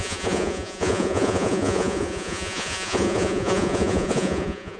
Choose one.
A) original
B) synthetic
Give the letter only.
B